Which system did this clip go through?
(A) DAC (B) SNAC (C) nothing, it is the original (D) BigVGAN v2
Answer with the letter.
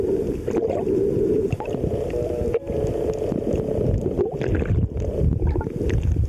C